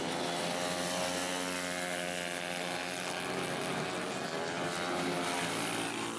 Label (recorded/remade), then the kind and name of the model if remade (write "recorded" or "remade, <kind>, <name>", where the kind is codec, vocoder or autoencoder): recorded